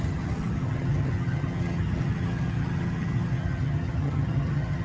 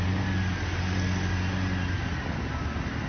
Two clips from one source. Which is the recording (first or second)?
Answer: second